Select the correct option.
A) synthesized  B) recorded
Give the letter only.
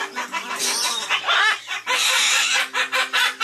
B